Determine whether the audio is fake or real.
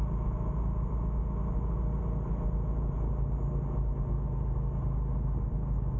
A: real